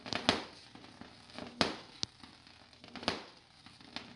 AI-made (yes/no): no